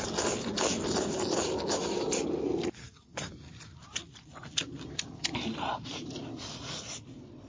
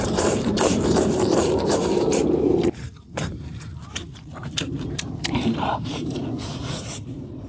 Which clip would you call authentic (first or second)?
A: first